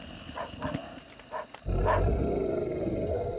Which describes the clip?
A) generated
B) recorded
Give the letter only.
B